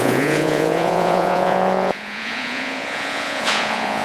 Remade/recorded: remade